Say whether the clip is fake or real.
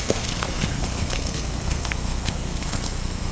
fake